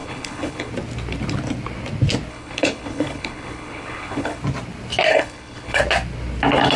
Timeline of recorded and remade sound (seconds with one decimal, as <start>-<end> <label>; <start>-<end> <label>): 0.0-0.7 remade; 0.7-2.3 recorded; 2.3-4.4 remade; 4.4-5.1 recorded; 5.1-5.8 remade; 5.8-6.8 recorded